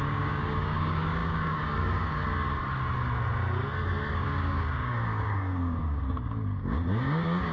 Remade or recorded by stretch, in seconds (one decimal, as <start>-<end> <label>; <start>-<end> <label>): 0.0-2.2 remade; 2.2-4.1 recorded; 4.1-7.5 remade